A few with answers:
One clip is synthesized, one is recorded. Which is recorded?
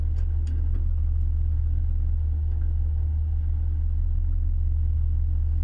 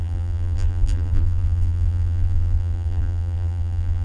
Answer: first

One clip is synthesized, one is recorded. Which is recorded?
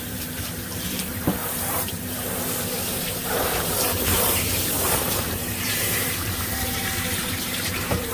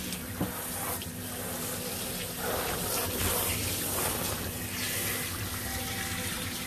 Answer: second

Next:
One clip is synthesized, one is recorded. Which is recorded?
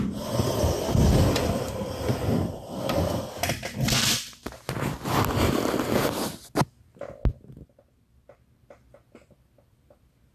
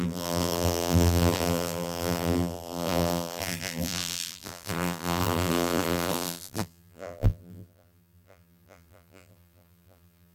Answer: first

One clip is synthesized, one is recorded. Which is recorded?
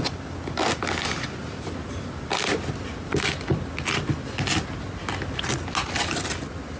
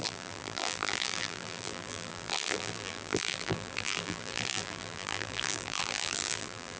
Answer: first